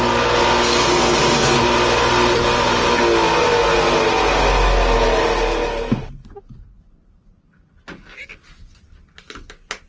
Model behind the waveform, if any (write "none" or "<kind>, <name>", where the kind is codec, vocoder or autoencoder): none